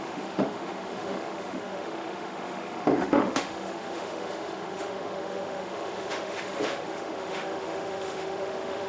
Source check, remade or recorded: remade